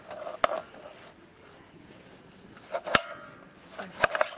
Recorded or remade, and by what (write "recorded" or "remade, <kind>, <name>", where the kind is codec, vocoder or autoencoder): recorded